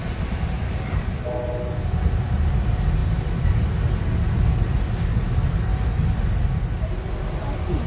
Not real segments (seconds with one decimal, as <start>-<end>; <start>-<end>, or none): none